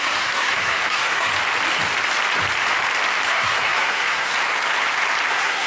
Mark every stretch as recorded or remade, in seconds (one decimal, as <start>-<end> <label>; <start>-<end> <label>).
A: 0.0-1.3 remade; 1.3-3.3 recorded; 3.3-4.3 remade; 4.3-5.3 recorded; 5.3-5.7 remade